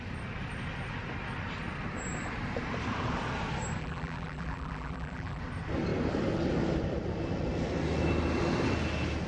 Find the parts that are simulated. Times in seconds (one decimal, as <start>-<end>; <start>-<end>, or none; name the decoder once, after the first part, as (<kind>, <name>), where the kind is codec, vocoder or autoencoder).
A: 3.8-5.4 (vocoder, BigVGAN v2)